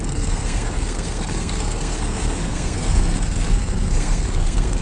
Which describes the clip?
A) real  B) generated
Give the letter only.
B